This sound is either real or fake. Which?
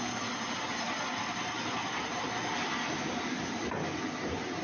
real